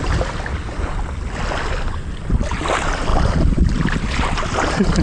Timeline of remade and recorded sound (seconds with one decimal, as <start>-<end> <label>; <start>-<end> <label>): 0.0-5.0 recorded